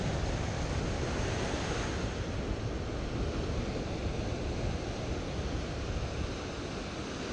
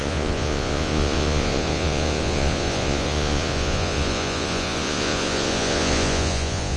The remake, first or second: second